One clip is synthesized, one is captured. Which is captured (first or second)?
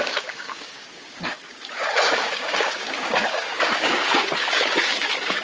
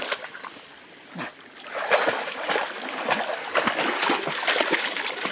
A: second